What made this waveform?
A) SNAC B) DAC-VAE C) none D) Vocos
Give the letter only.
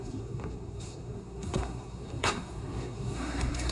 A